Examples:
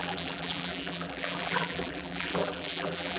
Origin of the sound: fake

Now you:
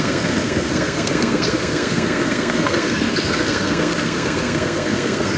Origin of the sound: fake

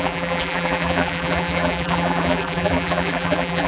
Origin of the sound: fake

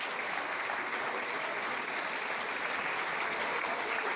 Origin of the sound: real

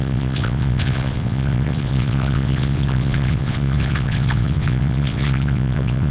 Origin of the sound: fake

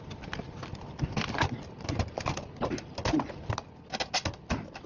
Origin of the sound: real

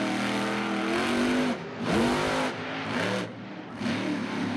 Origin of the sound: real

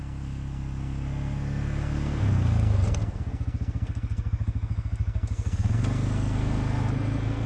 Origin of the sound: fake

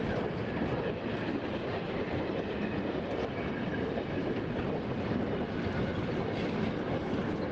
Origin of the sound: fake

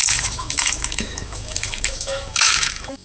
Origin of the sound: fake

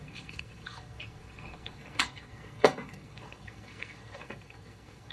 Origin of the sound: fake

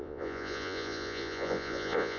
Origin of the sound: fake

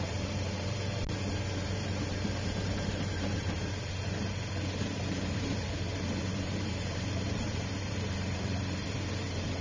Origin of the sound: fake